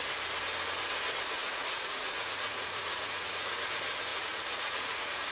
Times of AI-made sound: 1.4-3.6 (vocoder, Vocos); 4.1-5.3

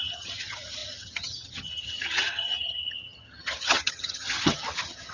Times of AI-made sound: 0.0-5.1 (vocoder, HiFi-GAN)

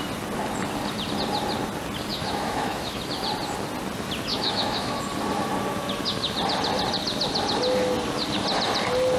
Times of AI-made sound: 2.1-3.0 (autoencoder, DAC-VAE); 4.3-5.0